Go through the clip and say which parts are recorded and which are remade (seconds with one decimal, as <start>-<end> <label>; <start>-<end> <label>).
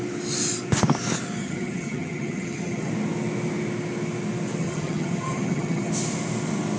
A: 0.0-1.4 recorded; 1.4-2.9 remade; 2.9-4.6 recorded; 4.6-5.9 remade; 5.9-6.8 recorded